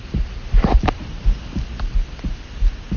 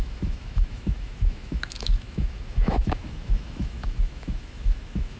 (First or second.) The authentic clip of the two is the first